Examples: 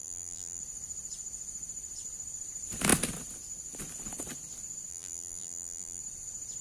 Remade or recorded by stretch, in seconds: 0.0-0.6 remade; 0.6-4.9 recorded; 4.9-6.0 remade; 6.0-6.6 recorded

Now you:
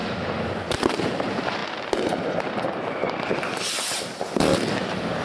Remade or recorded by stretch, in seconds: 0.0-1.6 remade; 1.6-4.7 recorded; 4.7-5.2 remade

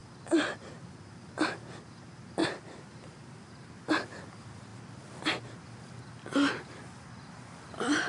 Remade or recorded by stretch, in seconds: 0.0-2.4 recorded; 2.4-3.7 remade; 3.7-8.1 recorded

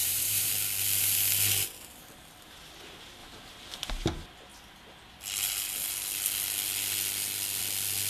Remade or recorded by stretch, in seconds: 0.0-0.5 remade; 0.5-3.2 recorded; 3.2-3.9 remade; 3.9-8.1 recorded

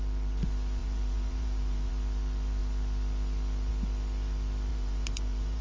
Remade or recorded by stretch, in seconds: 0.0-0.8 recorded; 0.8-1.9 remade; 1.9-4.7 recorded; 4.7-5.6 remade

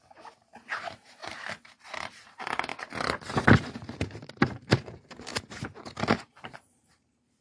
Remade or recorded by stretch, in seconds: 0.0-2.7 remade; 2.7-3.8 recorded; 3.8-5.3 remade; 5.3-6.4 recorded; 6.4-7.4 remade

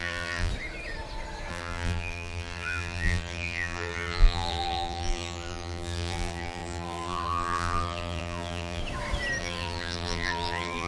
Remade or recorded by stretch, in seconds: 0.0-0.5 remade; 0.5-1.5 recorded; 1.5-8.8 remade; 8.8-9.4 recorded; 9.4-10.9 remade

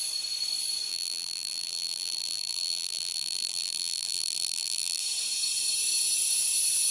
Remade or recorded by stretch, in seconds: 0.0-0.9 recorded; 0.9-5.0 remade; 5.0-6.9 recorded